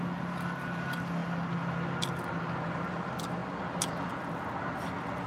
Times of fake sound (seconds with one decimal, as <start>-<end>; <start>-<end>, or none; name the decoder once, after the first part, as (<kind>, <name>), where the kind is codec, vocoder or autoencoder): none